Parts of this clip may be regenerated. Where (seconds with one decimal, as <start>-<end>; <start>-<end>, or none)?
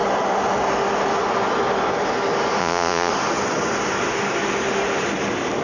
2.6-3.1